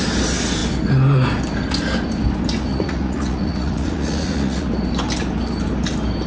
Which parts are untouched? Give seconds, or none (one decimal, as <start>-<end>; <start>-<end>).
0.0-2.7; 4.7-6.3